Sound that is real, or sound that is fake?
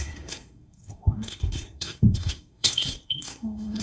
fake